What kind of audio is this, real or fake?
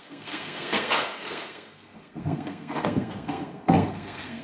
fake